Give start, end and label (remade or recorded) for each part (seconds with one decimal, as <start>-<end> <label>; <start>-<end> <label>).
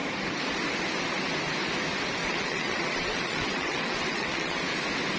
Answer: 0.0-2.2 recorded; 2.2-4.6 remade; 4.6-5.2 recorded